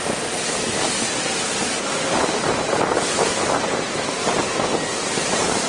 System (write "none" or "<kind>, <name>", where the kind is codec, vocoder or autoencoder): none